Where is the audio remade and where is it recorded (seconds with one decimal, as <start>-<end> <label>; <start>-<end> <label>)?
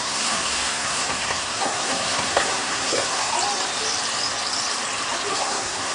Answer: 0.0-3.3 remade; 3.3-5.3 recorded; 5.3-5.9 remade